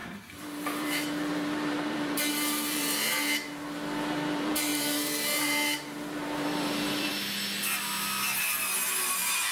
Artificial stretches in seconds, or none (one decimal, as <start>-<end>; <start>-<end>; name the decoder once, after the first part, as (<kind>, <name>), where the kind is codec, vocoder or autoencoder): 0.0-7.1 (vocoder, BigVGAN v2); 9.0-9.5